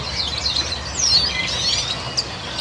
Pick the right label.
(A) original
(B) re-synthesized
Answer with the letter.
A